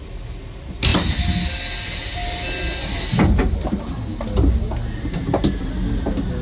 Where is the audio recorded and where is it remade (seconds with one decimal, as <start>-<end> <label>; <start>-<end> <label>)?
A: 0.0-6.4 recorded